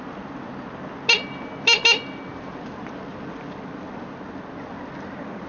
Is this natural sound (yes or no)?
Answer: yes